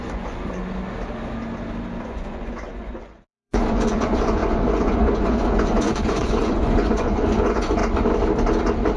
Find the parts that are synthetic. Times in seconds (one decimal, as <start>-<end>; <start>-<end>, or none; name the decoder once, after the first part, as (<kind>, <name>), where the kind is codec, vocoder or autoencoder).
0.0-0.6 (vocoder, Vocos); 2.0-7.8